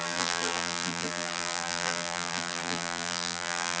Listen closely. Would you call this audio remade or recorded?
remade